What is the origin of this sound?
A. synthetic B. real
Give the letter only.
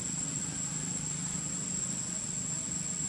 B